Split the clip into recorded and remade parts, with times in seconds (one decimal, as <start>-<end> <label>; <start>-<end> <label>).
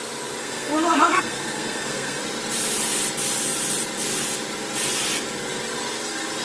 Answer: 0.0-0.4 recorded; 0.4-2.2 remade; 2.2-6.4 recorded